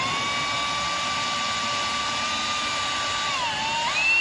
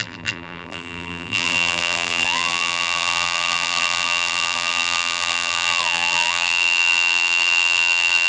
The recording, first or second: first